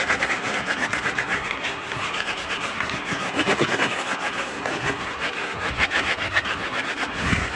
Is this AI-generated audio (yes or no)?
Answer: yes